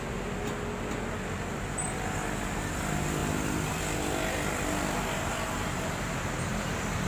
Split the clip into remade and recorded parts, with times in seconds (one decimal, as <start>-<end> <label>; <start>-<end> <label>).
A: 0.0-3.2 recorded; 3.2-3.8 remade; 3.8-7.1 recorded